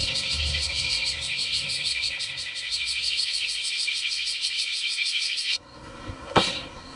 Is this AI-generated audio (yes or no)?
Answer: yes